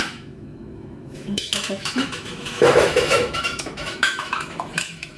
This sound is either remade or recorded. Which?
remade